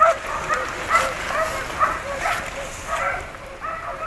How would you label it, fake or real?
real